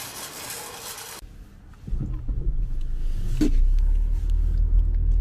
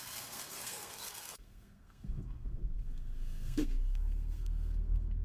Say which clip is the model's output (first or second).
second